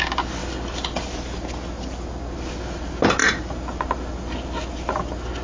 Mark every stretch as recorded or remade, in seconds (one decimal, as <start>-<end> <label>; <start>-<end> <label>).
0.0-5.4 recorded